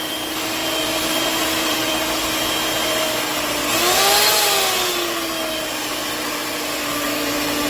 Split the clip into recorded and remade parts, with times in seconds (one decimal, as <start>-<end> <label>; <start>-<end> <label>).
0.0-1.8 remade; 1.8-6.2 recorded; 6.2-7.7 remade

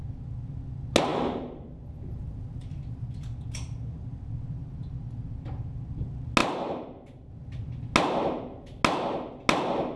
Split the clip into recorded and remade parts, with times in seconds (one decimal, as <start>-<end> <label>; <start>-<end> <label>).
0.0-1.1 recorded; 1.1-2.3 remade; 2.3-6.4 recorded; 6.4-7.3 remade; 7.3-10.0 recorded

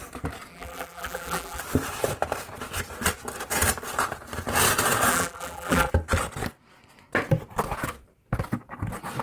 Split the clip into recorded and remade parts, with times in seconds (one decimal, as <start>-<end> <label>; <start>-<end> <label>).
0.0-0.5 recorded; 0.5-1.6 remade; 1.6-5.1 recorded; 5.1-5.9 remade; 5.9-9.2 recorded

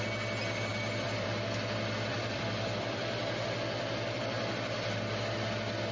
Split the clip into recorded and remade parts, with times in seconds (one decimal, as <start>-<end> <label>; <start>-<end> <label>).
0.0-0.7 recorded; 0.7-4.2 remade; 4.2-5.9 recorded

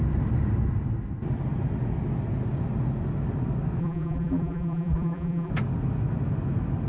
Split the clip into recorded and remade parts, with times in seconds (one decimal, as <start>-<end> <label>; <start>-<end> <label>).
0.0-3.8 recorded; 3.8-5.5 remade; 5.5-6.9 recorded

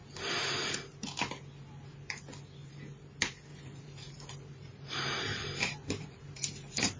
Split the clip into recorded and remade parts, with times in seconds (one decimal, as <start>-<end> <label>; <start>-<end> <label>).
0.0-2.6 recorded; 2.6-3.1 remade; 3.1-3.5 recorded; 3.5-7.0 remade

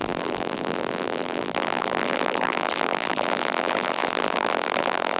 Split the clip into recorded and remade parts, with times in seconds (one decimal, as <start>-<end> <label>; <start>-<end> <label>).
0.0-5.2 remade

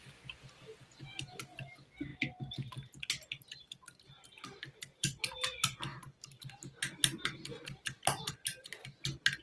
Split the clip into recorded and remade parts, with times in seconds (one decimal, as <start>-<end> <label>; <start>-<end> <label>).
0.0-9.4 recorded